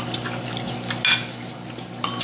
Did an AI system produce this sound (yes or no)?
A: no